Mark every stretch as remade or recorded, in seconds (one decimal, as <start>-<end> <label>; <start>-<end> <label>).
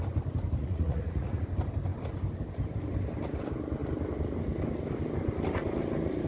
0.0-0.6 recorded; 0.6-1.5 remade; 1.5-6.3 recorded